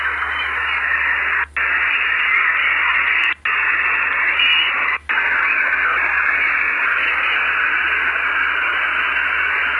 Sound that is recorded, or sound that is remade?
recorded